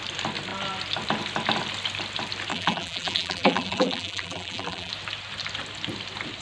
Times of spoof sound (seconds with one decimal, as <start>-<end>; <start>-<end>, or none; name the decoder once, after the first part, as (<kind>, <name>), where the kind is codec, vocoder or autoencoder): 2.5-4.9 (vocoder, BigVGAN v2)